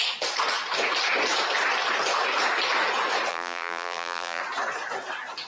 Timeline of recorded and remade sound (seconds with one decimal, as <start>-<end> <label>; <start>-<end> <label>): 0.0-3.3 recorded; 3.3-4.4 remade; 4.4-5.5 recorded